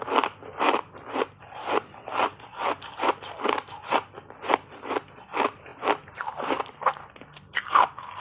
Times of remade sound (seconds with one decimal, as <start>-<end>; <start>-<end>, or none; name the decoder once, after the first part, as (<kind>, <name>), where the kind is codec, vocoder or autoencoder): 0.0-1.4 (vocoder, BigVGAN v2)